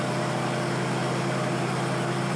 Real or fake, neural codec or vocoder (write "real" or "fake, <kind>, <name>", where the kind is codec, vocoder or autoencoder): real